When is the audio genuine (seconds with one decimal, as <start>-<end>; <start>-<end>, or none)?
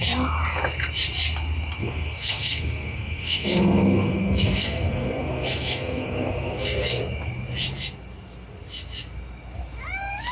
0.0-1.8; 7.0-10.3